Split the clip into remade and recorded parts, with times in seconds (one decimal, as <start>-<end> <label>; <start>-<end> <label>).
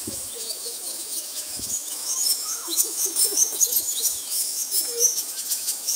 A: 0.0-6.0 remade